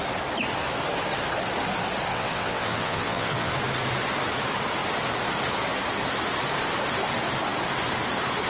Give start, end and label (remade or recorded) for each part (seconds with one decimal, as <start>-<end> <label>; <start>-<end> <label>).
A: 0.0-2.1 recorded; 2.1-3.5 remade; 3.5-8.5 recorded